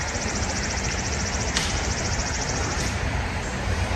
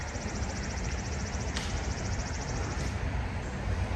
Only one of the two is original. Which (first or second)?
second